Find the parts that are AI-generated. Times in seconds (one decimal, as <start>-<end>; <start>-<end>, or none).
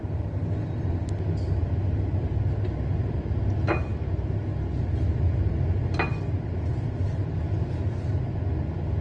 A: none